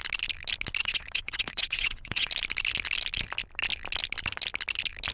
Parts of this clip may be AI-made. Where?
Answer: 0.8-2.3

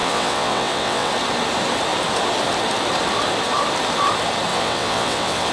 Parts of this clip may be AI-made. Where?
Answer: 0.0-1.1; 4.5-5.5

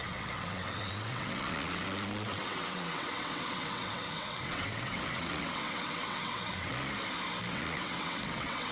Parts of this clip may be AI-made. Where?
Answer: 0.0-6.7; 7.5-8.7